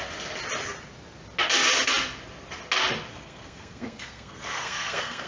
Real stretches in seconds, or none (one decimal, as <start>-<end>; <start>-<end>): 0.0-3.1